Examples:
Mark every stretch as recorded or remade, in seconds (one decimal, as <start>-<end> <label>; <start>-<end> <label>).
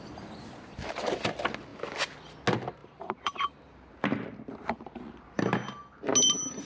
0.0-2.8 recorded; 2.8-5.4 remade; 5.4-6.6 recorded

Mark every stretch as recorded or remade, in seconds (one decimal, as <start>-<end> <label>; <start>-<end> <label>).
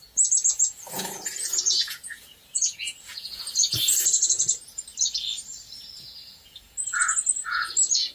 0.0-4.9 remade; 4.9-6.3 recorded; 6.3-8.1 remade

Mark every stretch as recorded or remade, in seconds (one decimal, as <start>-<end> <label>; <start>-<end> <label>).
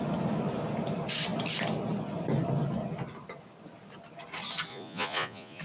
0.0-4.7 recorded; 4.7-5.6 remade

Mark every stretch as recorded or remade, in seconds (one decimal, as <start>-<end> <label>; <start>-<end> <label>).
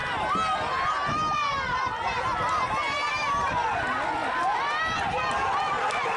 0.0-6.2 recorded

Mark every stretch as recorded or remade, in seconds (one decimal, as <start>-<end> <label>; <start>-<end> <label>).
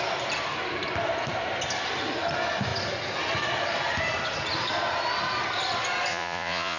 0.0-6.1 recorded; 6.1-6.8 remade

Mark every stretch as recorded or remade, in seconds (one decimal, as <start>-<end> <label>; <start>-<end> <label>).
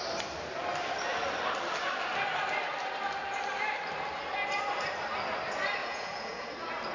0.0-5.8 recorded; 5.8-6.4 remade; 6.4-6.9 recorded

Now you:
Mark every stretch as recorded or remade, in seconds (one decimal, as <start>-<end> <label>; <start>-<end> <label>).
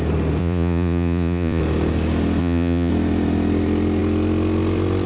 0.0-0.4 recorded; 0.4-1.6 remade; 1.6-2.4 recorded; 2.4-2.9 remade; 2.9-5.1 recorded